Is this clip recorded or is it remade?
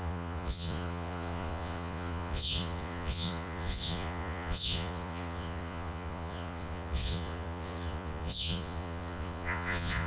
remade